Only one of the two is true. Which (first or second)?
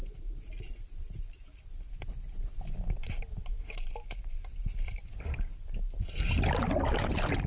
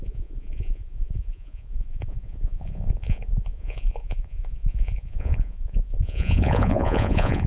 first